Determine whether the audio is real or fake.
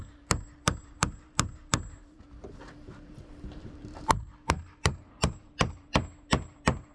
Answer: fake